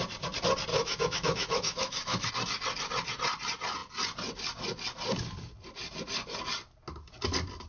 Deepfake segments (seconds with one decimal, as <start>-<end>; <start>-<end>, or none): 0.7-2.3